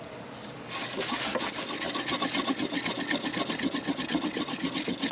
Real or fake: real